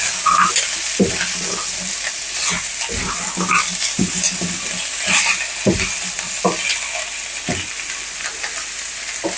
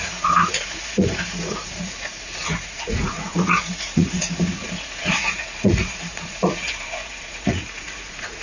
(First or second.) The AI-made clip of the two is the second